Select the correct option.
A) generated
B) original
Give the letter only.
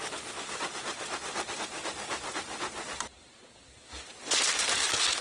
B